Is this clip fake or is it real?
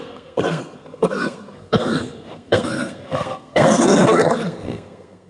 fake